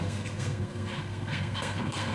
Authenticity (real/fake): fake